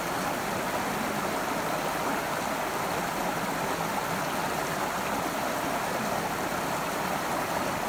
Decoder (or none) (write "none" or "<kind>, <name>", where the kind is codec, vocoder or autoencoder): none